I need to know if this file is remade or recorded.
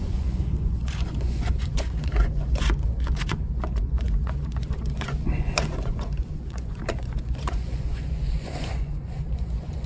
remade